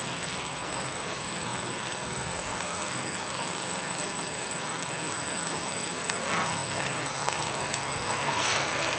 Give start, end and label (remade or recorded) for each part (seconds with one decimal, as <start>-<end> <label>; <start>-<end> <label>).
0.0-9.0 remade